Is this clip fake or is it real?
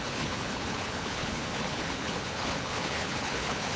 fake